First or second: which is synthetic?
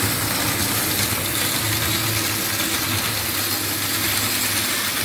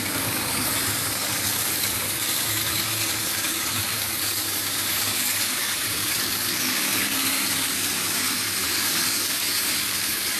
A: second